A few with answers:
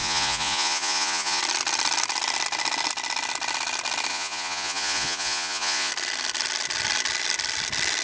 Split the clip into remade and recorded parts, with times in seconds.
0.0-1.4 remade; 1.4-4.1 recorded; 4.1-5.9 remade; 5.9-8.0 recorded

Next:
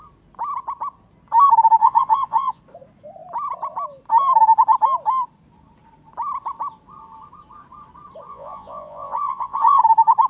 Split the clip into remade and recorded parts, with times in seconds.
0.0-1.8 recorded; 1.8-2.6 remade; 2.6-8.3 recorded; 8.3-9.8 remade; 9.8-10.3 recorded

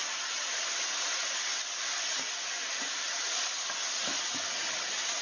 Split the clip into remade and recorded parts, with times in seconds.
0.0-5.2 recorded

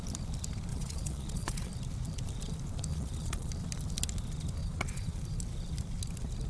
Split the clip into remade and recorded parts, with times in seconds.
0.0-0.7 recorded; 0.7-1.7 remade; 1.7-2.9 recorded; 2.9-3.5 remade; 3.5-4.6 recorded; 4.6-5.2 remade; 5.2-6.5 recorded

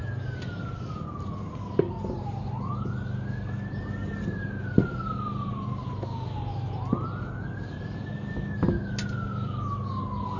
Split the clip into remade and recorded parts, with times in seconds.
0.0-10.4 recorded